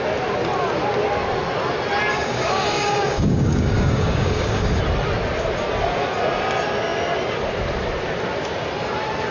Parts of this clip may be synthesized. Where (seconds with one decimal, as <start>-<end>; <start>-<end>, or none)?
2.1-4.8